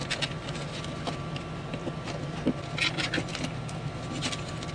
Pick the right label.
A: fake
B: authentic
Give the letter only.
B